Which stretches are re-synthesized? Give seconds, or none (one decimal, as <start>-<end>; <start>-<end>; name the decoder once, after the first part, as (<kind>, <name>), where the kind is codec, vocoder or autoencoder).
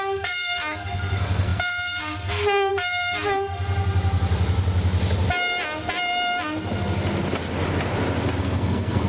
0.0-3.5 (codec, SNAC); 8.4-9.1